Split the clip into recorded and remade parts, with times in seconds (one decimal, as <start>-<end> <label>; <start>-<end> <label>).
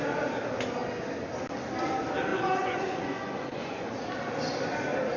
0.0-2.3 recorded; 2.3-3.9 remade; 3.9-5.2 recorded